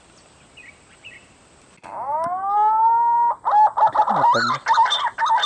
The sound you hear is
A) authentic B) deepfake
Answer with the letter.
A